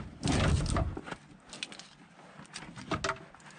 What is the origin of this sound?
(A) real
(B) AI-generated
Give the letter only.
A